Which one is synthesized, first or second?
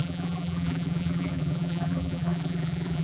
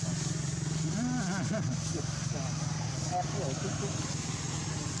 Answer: first